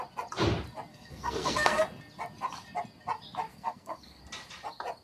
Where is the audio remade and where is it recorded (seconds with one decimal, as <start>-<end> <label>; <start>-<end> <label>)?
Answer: 0.0-0.9 recorded; 0.9-1.8 remade; 1.8-3.5 recorded; 3.5-4.2 remade; 4.2-5.0 recorded